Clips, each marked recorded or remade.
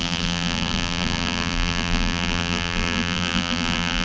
remade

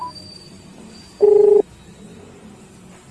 recorded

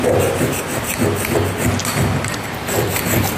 recorded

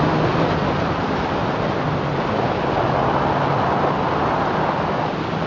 recorded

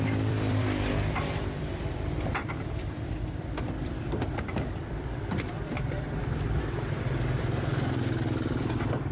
remade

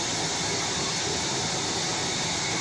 recorded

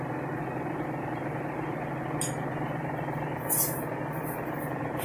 remade